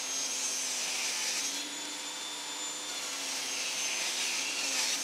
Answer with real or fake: real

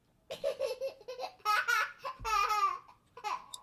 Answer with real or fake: real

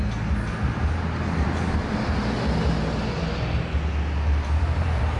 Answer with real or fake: real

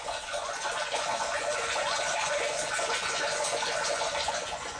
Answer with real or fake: fake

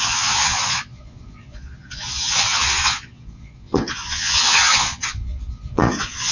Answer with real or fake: fake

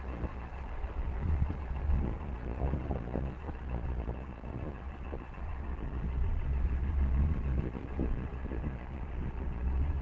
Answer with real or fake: fake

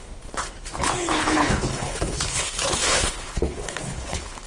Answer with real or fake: fake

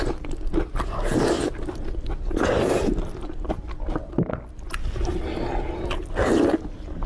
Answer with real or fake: real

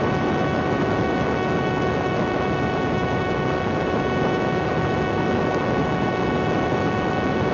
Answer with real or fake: fake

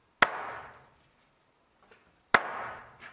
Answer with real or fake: real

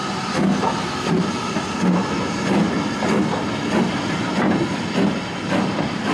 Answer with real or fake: real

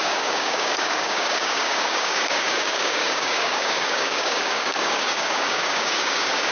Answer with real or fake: fake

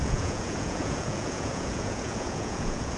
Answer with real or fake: fake